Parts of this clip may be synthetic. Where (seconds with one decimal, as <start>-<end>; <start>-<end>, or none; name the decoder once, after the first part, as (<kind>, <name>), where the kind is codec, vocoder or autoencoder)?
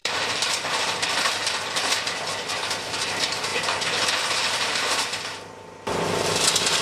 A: 0.0-2.5 (vocoder, BigVGAN v2); 3.5-5.3